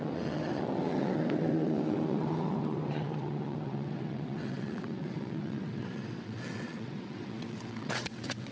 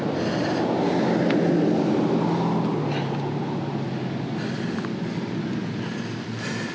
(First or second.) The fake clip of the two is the first